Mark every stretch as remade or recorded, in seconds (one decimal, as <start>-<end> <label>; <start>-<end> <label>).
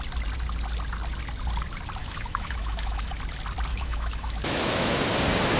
0.0-2.0 recorded; 2.0-3.1 remade; 3.1-3.7 recorded; 3.7-5.0 remade; 5.0-5.6 recorded